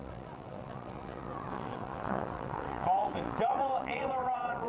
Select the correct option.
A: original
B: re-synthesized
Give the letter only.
B